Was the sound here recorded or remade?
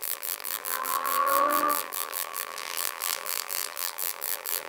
remade